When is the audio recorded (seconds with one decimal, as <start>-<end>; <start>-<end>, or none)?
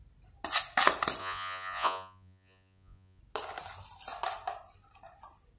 0.0-1.2; 3.2-5.6